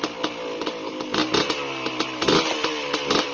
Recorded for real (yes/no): yes